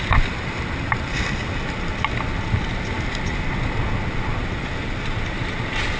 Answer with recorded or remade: recorded